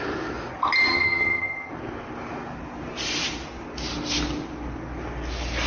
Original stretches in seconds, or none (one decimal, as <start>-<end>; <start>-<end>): 0.0-0.9; 1.7-5.7